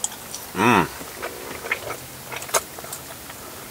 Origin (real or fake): real